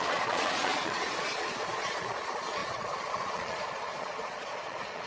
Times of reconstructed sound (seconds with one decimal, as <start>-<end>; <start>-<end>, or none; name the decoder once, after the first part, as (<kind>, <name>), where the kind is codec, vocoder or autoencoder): 0.0-5.1 (vocoder, Vocos)